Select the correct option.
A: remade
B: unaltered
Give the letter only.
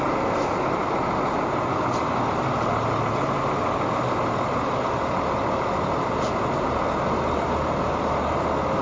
B